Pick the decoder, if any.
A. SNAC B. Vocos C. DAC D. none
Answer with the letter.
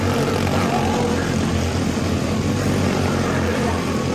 D